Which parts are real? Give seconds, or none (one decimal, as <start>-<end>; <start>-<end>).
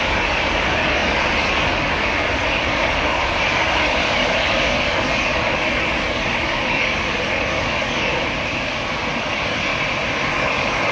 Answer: 8.1-9.2; 9.7-10.3